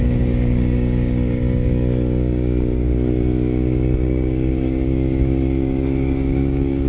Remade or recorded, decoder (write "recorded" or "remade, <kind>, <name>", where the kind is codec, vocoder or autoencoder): remade, codec, DAC